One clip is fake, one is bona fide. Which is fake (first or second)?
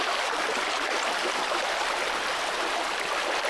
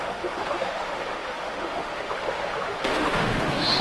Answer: second